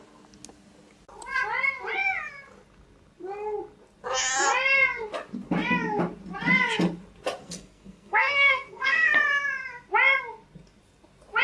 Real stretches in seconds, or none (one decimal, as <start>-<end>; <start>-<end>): 0.0-7.4; 9.1-11.4